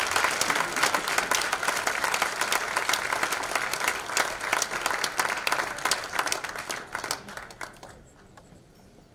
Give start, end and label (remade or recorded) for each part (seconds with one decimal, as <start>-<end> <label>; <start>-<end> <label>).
0.0-6.0 recorded; 6.0-6.5 remade; 6.5-9.1 recorded